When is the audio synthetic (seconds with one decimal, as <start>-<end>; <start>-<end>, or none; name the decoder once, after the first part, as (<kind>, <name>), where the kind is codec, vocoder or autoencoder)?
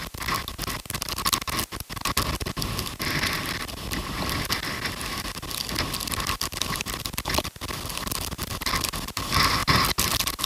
none